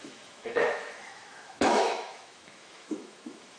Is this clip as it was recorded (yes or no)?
no